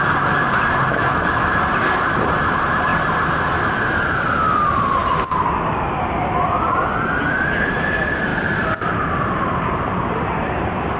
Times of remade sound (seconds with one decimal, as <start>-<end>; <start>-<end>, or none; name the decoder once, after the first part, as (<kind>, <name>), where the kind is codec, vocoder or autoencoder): 0.0-2.9 (vocoder, BigVGAN v2); 4.1-5.0; 7.9-11.0